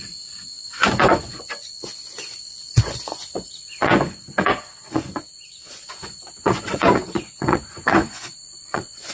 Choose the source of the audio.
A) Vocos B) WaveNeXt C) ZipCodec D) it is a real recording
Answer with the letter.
A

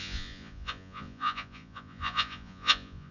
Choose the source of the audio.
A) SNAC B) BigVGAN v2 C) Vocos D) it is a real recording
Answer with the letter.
C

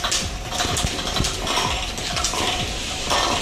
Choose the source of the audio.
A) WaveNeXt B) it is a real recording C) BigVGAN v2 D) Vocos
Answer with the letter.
B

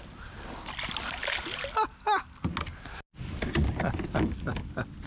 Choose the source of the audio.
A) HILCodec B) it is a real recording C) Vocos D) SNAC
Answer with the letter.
B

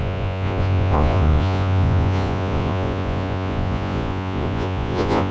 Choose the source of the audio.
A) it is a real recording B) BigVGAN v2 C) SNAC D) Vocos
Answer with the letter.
D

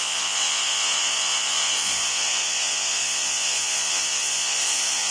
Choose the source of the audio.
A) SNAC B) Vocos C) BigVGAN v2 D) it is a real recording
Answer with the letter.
B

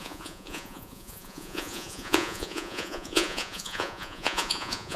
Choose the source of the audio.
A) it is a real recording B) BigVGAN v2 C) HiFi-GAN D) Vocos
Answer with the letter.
D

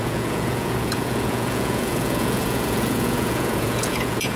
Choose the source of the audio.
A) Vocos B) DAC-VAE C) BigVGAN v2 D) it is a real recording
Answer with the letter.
A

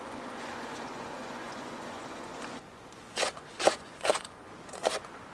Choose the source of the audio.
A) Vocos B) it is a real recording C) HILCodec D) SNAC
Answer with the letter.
A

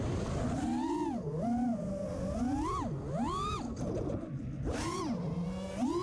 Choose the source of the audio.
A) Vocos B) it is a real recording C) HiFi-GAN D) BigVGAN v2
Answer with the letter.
B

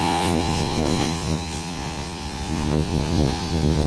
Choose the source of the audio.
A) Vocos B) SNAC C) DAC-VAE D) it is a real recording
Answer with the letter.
A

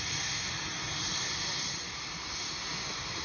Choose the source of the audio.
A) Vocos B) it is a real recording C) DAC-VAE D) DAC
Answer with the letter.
B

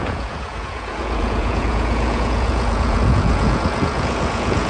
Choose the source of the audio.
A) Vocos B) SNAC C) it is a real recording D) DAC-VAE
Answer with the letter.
A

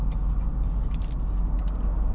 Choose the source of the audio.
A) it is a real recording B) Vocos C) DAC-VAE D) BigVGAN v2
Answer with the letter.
A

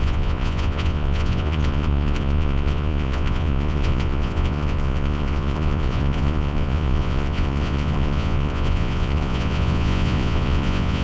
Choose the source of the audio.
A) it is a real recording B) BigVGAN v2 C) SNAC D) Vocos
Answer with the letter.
D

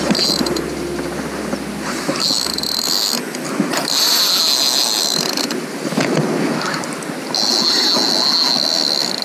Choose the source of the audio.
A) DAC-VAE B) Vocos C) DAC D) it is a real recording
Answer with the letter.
D